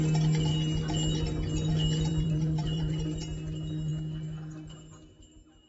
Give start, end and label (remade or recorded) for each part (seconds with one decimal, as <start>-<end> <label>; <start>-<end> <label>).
0.0-2.1 recorded; 2.1-3.2 remade; 3.2-5.7 recorded